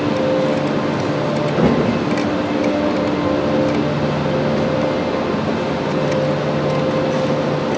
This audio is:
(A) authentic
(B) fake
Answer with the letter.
A